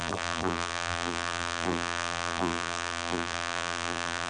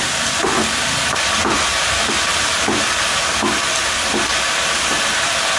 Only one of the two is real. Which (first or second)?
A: second